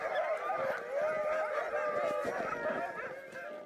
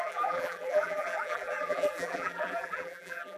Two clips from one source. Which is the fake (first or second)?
second